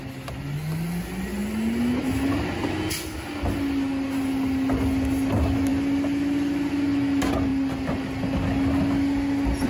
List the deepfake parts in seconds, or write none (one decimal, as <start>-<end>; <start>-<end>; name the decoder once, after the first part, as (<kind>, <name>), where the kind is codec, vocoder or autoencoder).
none